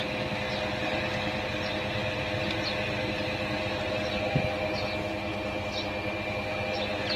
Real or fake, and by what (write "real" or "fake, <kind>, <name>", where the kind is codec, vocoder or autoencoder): real